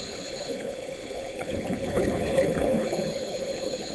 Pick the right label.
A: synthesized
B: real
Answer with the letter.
A